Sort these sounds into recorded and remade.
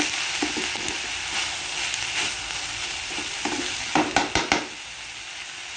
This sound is recorded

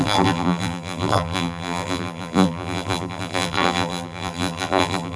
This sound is remade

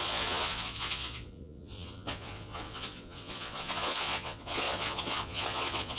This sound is remade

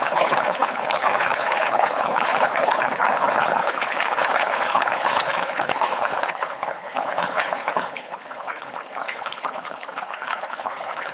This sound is remade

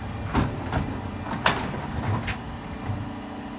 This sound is recorded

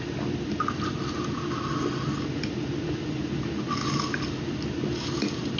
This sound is recorded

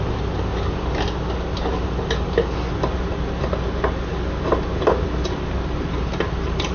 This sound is recorded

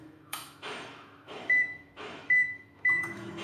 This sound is remade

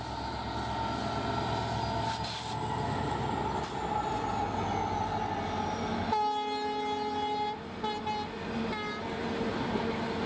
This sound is recorded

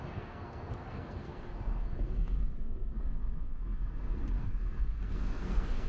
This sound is remade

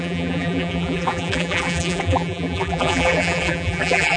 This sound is remade